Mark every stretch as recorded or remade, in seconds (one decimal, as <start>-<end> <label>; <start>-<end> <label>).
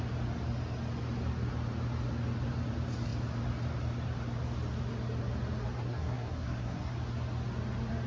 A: 0.0-5.8 recorded; 5.8-6.9 remade; 6.9-8.1 recorded